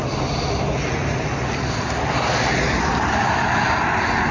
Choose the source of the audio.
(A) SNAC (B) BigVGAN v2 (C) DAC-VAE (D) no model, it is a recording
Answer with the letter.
D